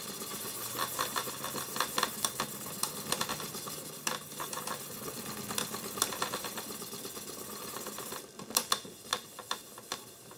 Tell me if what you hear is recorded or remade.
recorded